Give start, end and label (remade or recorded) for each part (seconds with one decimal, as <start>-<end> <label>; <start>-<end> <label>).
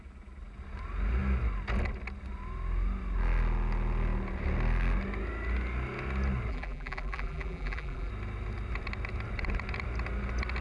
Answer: 0.0-6.5 recorded; 6.5-8.1 remade; 8.1-10.6 recorded